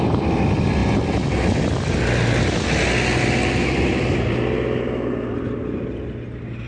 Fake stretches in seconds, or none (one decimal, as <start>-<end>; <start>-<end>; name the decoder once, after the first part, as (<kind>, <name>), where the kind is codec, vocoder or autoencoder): none